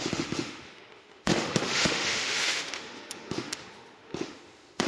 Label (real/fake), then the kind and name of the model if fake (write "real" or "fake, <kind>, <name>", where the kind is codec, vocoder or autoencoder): fake, autoencoder, DAC-VAE